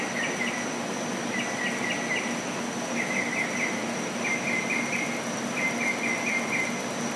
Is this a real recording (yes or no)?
yes